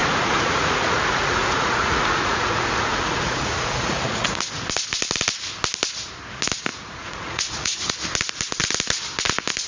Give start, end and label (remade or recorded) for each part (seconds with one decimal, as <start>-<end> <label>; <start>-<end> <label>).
0.0-4.4 remade; 4.4-6.7 recorded; 6.7-7.9 remade; 7.9-9.7 recorded